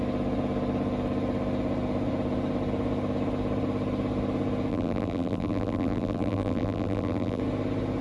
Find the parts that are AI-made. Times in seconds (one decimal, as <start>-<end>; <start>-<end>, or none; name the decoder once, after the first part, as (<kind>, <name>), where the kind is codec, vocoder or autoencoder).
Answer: 4.7-7.4 (vocoder, BigVGAN v2)